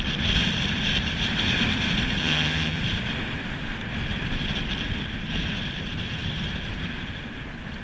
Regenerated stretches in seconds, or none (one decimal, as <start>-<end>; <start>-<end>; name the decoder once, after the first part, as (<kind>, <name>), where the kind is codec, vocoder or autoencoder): 2.2-2.8 (vocoder, HiFi-GAN)